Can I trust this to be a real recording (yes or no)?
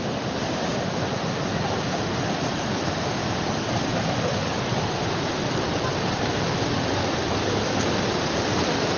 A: yes